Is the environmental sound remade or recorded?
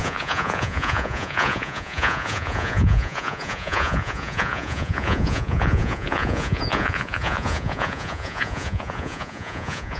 remade